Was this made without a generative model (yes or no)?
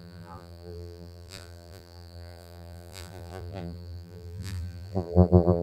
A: no